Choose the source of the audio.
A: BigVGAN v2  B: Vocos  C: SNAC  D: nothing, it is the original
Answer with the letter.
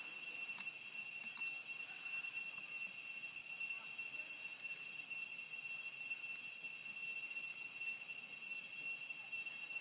D